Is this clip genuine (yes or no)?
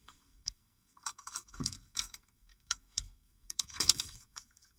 no